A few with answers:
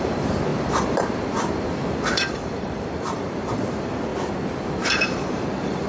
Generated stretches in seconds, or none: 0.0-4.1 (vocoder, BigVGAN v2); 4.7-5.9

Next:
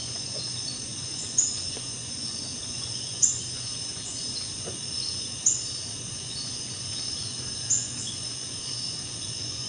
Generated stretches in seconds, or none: 0.0-9.7 (vocoder, Vocos)

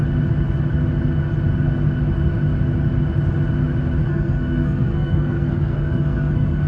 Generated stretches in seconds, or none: 4.0-6.7 (codec, SNAC)